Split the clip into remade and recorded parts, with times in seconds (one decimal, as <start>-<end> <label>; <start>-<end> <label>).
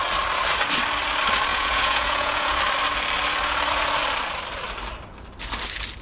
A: 0.0-1.5 recorded; 1.5-2.6 remade; 2.6-6.0 recorded